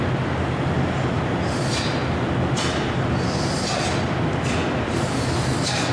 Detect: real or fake real